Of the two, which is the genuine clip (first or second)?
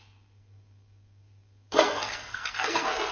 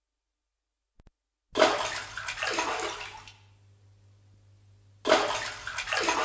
second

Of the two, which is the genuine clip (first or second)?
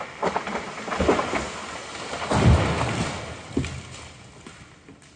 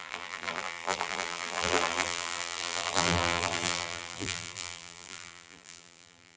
first